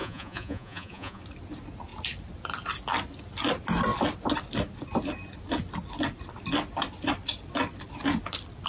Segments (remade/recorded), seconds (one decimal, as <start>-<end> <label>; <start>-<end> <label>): 0.0-1.2 remade; 1.2-8.7 recorded

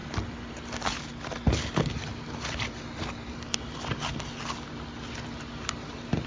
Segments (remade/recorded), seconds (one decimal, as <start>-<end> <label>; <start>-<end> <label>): 0.0-6.3 recorded

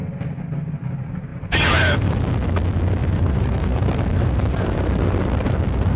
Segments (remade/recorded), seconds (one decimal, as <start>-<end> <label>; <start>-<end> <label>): 0.0-1.3 recorded; 1.3-2.1 remade; 2.1-3.0 recorded; 3.0-4.9 remade; 4.9-6.0 recorded

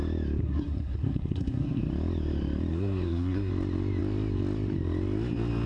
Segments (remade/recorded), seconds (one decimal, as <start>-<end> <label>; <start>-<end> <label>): 0.0-0.4 recorded; 0.4-1.8 remade; 1.8-2.7 recorded; 2.7-3.5 remade; 3.5-5.7 recorded

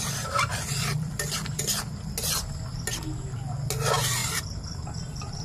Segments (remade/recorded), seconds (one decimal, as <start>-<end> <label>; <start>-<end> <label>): 0.0-0.5 recorded; 0.5-1.6 remade; 1.6-4.2 recorded; 4.2-5.0 remade; 5.0-5.4 recorded

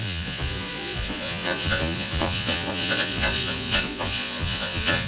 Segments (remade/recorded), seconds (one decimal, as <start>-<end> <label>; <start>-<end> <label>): 0.0-5.1 remade